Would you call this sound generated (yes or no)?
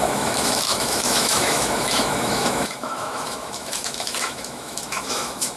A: yes